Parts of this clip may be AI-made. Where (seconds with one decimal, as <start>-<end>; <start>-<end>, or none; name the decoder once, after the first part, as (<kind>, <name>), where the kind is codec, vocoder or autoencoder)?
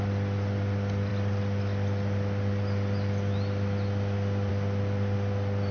none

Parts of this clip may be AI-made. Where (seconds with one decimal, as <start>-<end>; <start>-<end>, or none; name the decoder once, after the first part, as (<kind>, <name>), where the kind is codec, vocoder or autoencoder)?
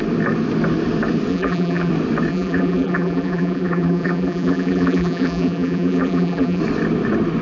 1.3-1.9 (vocoder, BigVGAN v2); 2.3-6.6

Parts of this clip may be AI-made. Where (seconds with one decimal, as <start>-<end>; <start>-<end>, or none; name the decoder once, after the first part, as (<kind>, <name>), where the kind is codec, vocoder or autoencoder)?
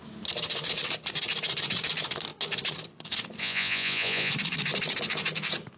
3.4-4.3 (vocoder, Vocos)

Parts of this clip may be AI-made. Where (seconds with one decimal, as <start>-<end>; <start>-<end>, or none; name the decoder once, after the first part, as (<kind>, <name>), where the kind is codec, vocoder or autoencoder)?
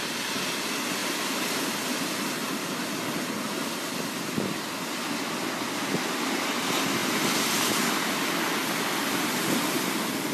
1.0-1.9 (vocoder, BigVGAN v2); 7.0-8.1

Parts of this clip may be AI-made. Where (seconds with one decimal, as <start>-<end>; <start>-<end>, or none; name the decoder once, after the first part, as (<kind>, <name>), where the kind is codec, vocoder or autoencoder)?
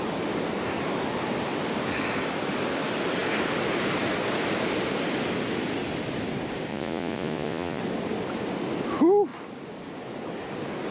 6.7-7.8 (vocoder, Vocos)